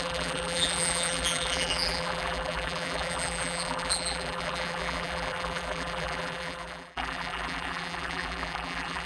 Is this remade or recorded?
remade